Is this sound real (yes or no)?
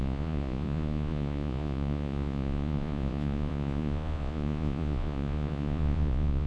no